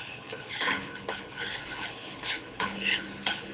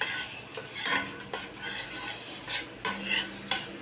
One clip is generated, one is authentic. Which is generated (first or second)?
first